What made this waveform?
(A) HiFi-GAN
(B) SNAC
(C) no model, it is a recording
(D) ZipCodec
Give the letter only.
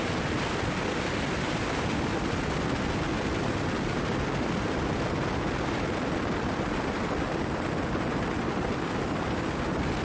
C